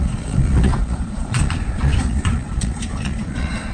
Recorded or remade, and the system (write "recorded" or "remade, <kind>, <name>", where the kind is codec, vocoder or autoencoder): remade, vocoder, Vocos